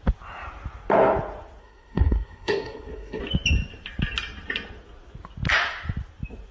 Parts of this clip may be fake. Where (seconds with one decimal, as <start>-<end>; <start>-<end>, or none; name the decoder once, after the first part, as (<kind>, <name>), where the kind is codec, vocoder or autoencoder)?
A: 1.6-3.2 (codec, SNAC)